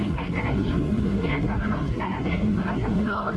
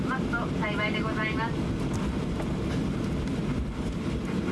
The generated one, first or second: first